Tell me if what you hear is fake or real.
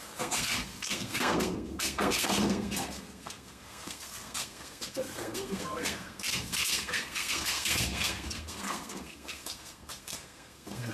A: fake